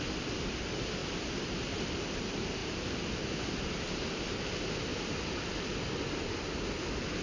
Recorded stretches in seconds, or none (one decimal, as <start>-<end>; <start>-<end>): 0.0-1.0; 2.2-2.6; 3.5-4.9; 5.5-7.2